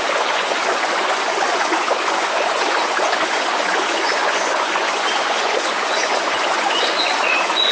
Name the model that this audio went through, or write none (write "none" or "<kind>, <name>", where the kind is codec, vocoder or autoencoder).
vocoder, Vocos